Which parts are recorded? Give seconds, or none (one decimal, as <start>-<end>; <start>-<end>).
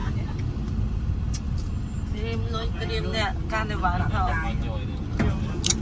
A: 0.0-5.8